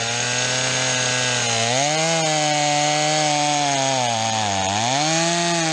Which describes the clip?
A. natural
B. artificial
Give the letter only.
A